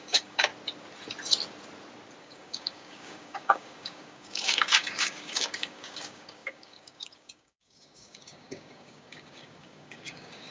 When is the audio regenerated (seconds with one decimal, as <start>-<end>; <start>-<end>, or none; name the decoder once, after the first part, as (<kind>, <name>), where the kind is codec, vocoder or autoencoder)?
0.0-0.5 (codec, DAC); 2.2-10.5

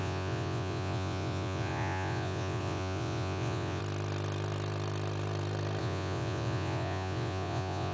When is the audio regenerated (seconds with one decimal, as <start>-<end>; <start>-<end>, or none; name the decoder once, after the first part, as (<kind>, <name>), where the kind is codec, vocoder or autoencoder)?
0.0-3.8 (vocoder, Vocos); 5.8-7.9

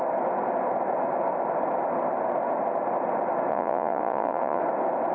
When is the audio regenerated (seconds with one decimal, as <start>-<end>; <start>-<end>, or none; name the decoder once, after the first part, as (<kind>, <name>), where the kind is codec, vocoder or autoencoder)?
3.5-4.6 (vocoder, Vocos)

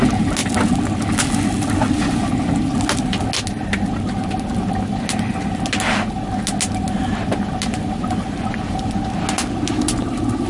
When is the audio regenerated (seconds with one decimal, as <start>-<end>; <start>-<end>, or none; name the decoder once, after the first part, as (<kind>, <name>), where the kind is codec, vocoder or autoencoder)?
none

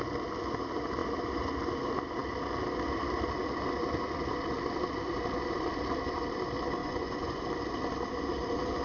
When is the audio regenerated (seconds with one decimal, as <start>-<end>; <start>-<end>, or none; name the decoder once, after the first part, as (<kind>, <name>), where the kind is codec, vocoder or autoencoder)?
6.8-7.4 (vocoder, Vocos)

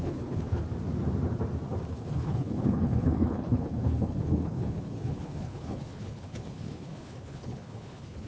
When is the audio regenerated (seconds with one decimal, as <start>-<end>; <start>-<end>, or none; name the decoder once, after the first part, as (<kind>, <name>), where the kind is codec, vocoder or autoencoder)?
0.0-0.6 (codec, HILCodec); 1.9-8.3

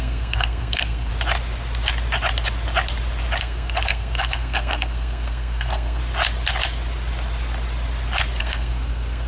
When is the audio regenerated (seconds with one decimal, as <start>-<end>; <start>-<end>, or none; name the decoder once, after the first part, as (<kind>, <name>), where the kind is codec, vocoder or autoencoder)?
0.0-1.1 (codec, SNAC); 3.4-6.0; 8.4-9.3

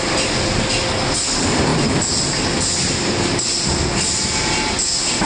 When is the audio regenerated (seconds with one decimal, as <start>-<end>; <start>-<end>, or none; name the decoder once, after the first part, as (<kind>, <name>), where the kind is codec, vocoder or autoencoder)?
none